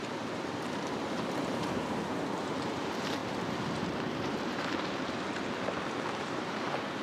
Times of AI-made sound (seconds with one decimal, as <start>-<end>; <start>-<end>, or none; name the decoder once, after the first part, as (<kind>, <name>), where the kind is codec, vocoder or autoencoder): 0.0-7.0 (vocoder, BigVGAN v2)